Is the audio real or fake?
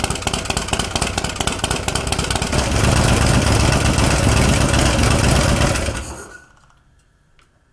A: real